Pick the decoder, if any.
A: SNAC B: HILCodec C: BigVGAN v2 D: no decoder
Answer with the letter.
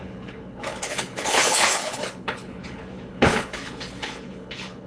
B